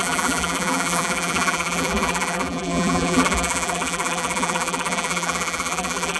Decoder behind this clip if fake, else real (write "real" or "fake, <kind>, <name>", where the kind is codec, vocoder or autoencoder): fake, vocoder, BigVGAN v2